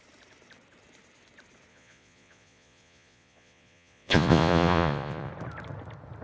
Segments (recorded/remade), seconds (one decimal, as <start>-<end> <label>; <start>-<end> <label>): 0.0-1.7 recorded; 1.7-5.3 remade; 5.3-6.2 recorded